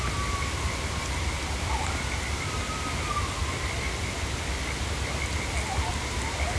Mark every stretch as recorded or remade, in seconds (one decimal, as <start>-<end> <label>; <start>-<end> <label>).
0.0-6.6 recorded